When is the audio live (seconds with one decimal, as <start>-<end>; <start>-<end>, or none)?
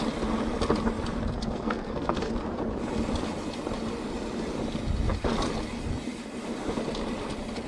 0.0-1.4; 2.3-7.7